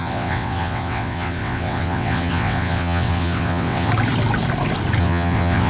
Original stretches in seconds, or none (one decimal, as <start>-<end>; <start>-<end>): 3.9-5.0